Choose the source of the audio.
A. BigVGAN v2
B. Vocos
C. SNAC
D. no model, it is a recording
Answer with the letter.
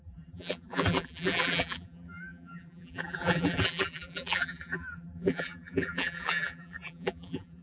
A